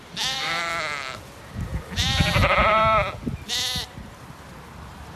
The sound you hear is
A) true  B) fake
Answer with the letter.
B